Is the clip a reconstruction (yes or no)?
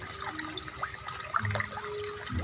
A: no